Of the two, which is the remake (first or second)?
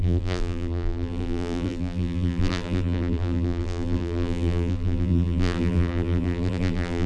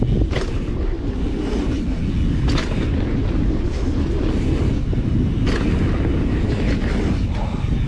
first